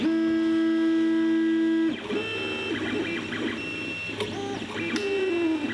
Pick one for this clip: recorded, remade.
recorded